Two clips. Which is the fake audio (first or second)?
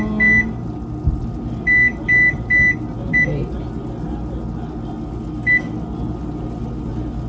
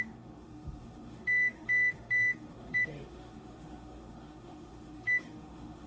second